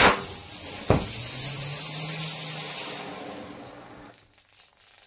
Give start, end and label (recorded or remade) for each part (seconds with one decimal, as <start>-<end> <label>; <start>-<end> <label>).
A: 0.0-5.1 recorded